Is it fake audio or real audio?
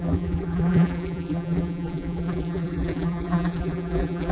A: fake